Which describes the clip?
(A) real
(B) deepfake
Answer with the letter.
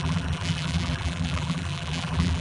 B